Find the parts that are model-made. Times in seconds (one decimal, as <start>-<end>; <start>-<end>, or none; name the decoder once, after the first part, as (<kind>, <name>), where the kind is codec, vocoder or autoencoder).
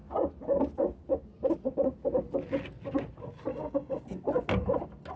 3.5-4.0 (codec, DAC)